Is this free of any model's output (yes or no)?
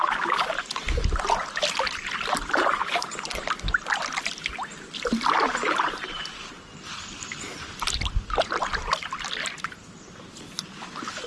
yes